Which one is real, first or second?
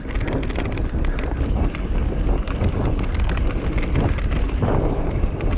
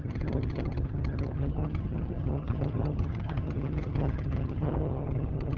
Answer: first